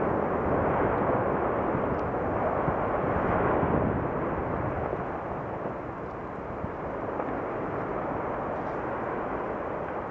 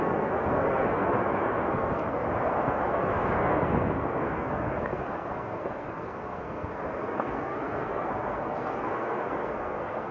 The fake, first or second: second